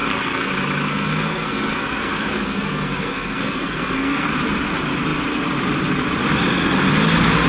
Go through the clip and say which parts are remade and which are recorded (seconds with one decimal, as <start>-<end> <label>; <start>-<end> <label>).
0.0-0.5 remade; 0.5-0.9 recorded; 0.9-4.3 remade; 4.3-7.5 recorded